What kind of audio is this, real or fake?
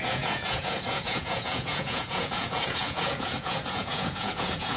fake